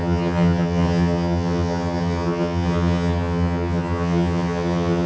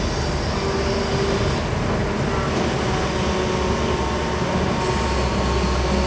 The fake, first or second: first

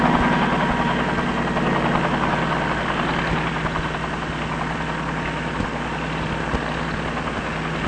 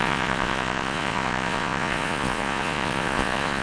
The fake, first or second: second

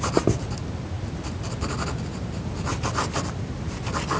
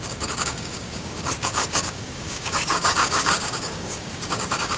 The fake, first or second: second